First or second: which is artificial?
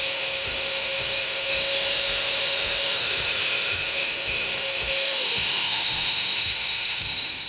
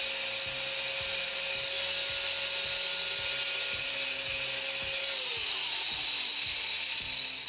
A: first